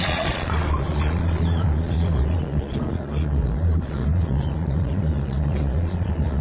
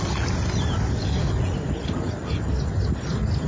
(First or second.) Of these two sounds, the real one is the second